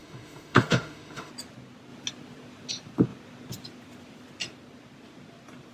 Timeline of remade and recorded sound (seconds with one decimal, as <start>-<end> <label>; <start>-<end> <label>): 0.0-1.3 remade; 1.3-5.7 recorded